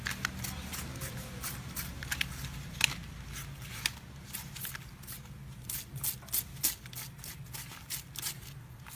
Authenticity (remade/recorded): recorded